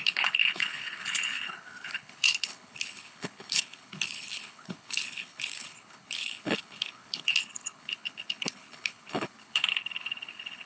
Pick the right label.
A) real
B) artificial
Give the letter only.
B